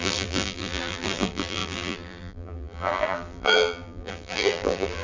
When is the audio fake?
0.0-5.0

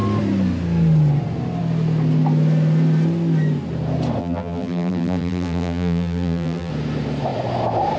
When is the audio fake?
4.2-6.7

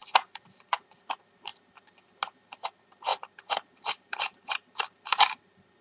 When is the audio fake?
0.0-1.5; 2.4-5.8

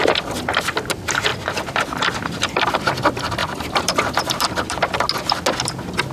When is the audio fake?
1.3-2.8; 3.4-4.8

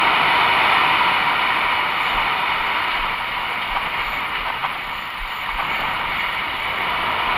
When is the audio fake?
2.3-3.3; 4.6-6.8